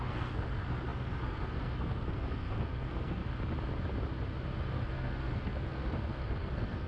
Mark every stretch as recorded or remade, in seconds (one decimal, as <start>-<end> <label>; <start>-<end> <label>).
0.0-3.2 remade; 3.2-4.6 recorded; 4.6-6.9 remade